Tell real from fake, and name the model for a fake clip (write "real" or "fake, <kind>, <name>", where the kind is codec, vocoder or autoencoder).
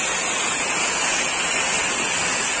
real